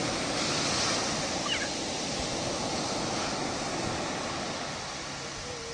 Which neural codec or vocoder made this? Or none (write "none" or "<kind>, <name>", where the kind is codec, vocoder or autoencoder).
none